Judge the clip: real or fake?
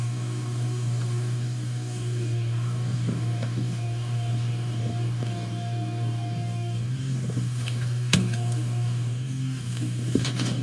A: fake